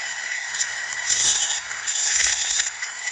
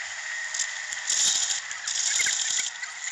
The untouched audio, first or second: second